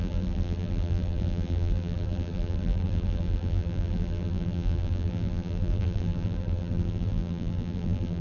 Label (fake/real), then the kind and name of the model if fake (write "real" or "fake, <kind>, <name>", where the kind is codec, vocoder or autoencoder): fake, vocoder, BigVGAN v2